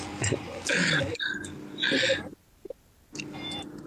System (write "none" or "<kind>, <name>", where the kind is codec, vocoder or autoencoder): none